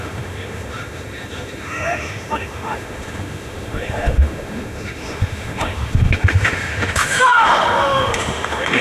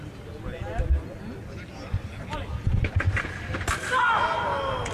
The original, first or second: second